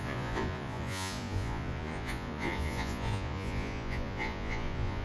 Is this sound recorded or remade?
remade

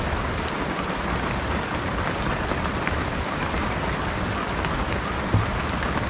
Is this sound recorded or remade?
recorded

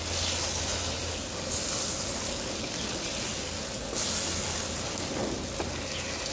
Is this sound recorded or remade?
recorded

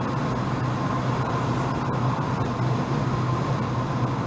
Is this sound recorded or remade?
recorded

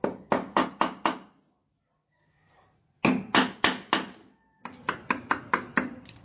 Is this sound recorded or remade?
recorded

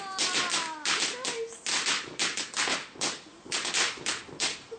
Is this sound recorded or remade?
recorded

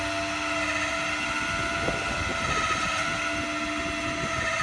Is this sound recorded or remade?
recorded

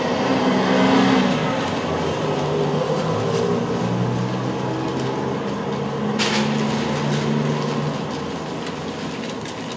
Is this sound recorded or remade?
recorded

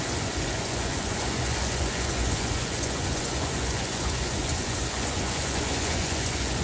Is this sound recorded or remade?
remade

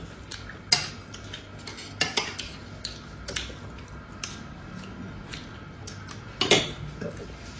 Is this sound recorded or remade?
recorded